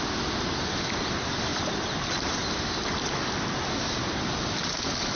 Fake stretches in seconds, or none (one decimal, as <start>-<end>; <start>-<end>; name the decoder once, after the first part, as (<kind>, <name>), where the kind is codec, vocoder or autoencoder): 1.5-2.0 (vocoder, BigVGAN v2)